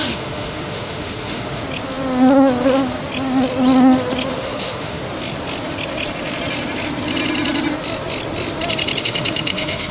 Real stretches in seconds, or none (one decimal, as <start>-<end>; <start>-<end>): 1.6-4.3; 5.0-9.0